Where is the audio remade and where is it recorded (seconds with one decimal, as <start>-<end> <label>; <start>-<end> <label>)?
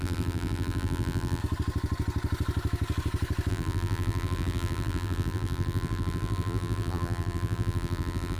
0.0-1.4 remade; 1.4-3.5 recorded; 3.5-8.4 remade